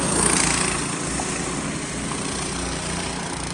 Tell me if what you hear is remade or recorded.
recorded